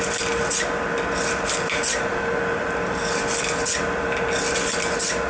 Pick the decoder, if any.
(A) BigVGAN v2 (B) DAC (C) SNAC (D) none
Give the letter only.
D